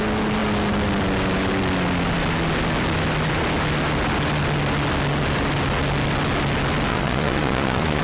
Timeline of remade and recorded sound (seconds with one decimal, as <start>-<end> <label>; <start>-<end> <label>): 0.0-6.9 recorded; 6.9-8.0 remade